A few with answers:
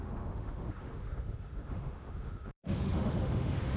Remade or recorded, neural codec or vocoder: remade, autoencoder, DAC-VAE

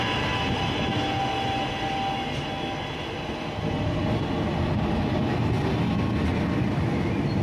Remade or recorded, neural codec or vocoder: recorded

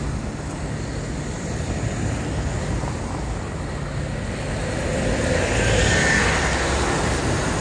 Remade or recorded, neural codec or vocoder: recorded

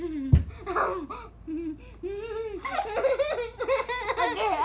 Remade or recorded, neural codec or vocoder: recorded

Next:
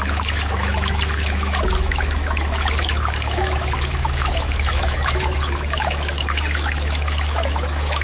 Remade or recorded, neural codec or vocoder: remade, autoencoder, DAC-VAE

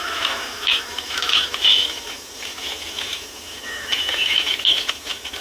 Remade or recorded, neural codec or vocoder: remade, autoencoder, DAC-VAE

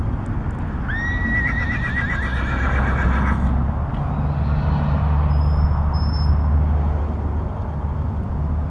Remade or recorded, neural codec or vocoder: recorded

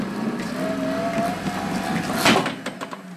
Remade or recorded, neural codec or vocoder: recorded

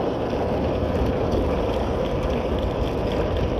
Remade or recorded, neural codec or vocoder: recorded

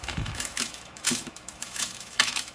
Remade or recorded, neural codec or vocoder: remade, autoencoder, DAC-VAE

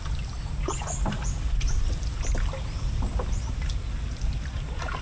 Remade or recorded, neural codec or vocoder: recorded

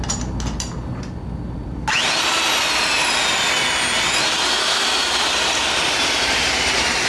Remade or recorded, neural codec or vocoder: recorded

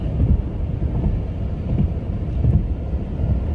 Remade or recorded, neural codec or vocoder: recorded